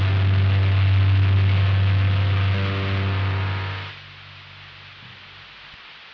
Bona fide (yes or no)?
yes